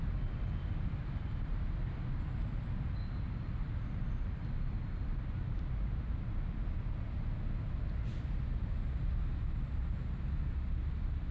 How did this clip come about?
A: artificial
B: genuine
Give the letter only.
B